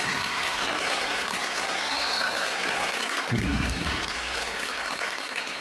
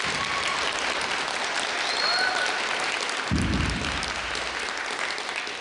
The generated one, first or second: first